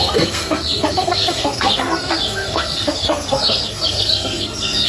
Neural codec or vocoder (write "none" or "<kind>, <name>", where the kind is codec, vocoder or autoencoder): codec, SNAC